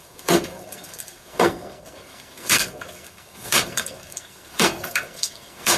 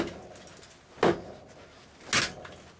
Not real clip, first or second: first